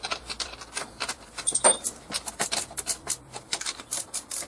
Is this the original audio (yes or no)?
no